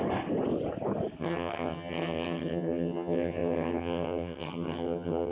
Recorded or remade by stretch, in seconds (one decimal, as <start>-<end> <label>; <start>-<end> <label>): 0.0-1.2 recorded; 1.2-5.3 remade